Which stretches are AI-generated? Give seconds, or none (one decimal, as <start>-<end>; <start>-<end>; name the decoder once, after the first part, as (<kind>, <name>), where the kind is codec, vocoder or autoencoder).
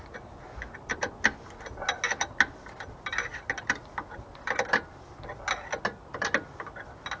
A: none